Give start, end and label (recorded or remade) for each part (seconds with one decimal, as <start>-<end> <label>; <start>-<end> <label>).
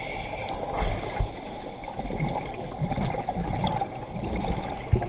0.0-5.1 recorded